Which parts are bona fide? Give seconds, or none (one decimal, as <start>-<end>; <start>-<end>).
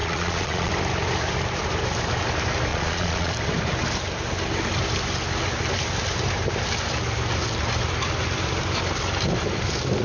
0.7-2.7; 3.3-10.0